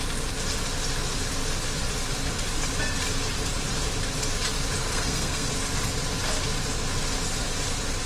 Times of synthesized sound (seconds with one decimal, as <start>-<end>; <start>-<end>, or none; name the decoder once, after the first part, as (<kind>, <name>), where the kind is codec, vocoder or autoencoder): 4.9-5.5 (codec, SNAC)